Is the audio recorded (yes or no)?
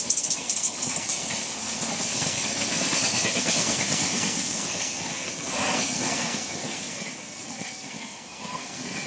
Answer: no